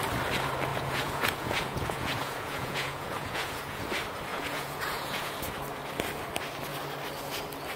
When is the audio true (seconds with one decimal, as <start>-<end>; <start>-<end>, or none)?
0.0-0.7; 3.8-4.3; 5.3-7.8